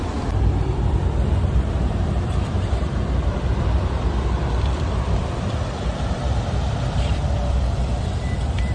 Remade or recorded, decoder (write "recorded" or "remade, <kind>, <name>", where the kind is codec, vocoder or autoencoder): remade, vocoder, BigVGAN v2